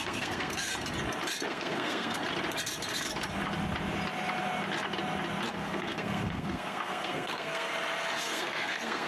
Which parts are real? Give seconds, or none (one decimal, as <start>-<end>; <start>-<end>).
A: 0.7-1.5; 2.2-5.5; 7.7-8.2